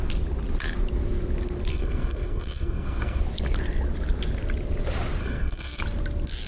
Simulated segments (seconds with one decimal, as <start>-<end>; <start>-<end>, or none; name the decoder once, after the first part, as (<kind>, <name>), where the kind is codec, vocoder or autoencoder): 1.7-3.2 (codec, SNAC); 5.2-5.8